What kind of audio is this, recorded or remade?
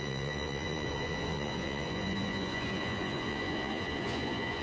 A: remade